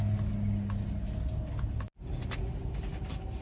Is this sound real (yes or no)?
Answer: yes